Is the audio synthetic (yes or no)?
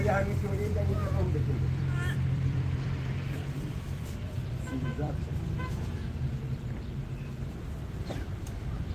yes